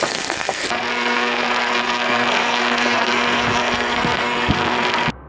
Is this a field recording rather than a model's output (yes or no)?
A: no